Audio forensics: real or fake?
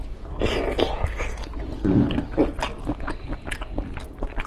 real